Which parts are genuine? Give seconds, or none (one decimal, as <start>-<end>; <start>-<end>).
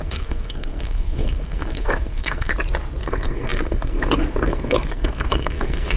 2.5-3.0